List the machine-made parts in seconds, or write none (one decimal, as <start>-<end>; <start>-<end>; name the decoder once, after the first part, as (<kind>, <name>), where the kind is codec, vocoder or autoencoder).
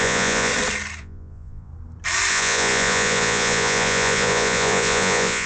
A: 0.0-0.5 (vocoder, Vocos); 1.0-1.7; 2.3-5.5